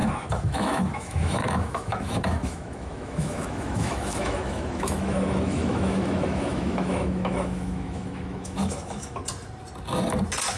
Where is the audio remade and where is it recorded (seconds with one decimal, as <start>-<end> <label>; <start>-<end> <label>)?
0.0-9.2 remade; 9.2-10.6 recorded